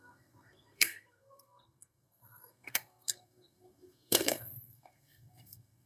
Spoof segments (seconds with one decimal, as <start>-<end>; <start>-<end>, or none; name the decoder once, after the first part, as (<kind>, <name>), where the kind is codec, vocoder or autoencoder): 0.0-5.9 (codec, SNAC)